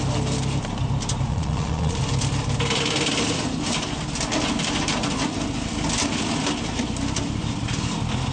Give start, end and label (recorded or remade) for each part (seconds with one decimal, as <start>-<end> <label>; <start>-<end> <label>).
0.0-1.3 recorded; 1.3-2.0 remade; 2.0-8.3 recorded